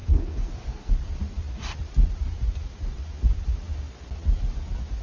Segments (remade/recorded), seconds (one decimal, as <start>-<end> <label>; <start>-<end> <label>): 0.0-0.9 remade; 0.9-5.0 recorded